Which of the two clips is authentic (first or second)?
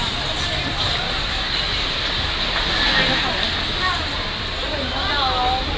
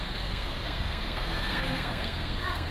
first